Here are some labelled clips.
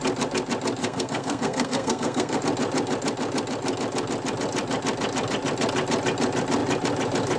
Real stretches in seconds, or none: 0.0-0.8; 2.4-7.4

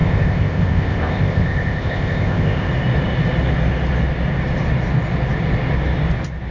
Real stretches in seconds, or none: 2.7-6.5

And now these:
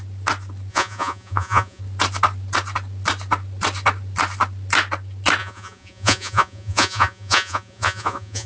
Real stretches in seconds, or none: 0.0-0.7; 1.8-5.4

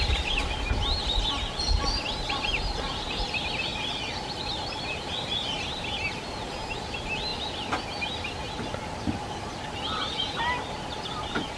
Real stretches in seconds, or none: 0.0-11.6

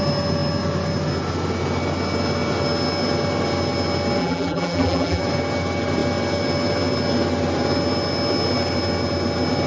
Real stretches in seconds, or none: 0.0-4.2; 5.2-9.7